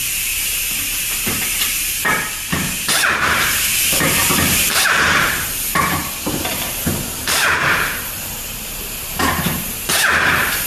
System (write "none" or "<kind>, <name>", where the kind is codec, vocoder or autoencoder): vocoder, BigVGAN v2